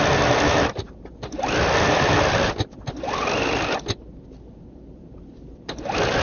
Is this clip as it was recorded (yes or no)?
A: yes